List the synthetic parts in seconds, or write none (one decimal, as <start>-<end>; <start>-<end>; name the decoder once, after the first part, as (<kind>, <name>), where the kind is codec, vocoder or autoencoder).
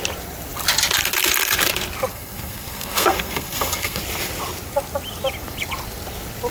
2.1-4.0 (codec, SNAC)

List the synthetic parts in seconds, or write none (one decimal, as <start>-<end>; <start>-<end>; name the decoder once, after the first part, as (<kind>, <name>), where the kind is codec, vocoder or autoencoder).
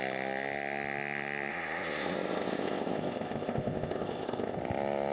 1.5-4.6 (codec, ZipCodec)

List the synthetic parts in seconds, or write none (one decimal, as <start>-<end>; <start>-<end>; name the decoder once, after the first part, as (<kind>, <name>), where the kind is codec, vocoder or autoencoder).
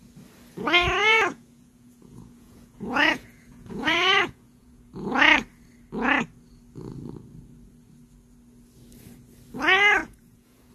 1.0-5.1 (vocoder, Vocos); 10.0-10.7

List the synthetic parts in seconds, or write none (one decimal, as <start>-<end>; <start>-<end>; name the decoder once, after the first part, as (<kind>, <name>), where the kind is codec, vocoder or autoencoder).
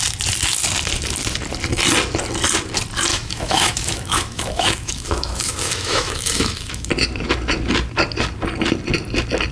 3.1-6.9 (autoencoder, DAC-VAE)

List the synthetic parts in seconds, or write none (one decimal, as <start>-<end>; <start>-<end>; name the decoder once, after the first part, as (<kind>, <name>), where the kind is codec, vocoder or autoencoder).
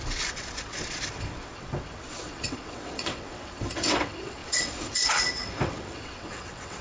0.0-6.8 (vocoder, WaveNeXt)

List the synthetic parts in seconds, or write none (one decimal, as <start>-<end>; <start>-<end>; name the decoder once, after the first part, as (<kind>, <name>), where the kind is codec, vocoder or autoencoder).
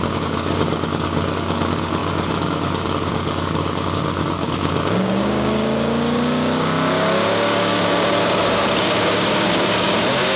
0.0-10.4 (codec, DAC)